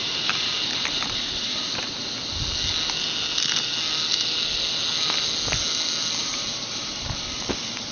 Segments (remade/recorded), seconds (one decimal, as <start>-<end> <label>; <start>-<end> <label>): 0.0-2.2 remade; 2.2-6.2 recorded; 6.2-7.9 remade